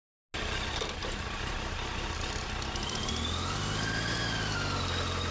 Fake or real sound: real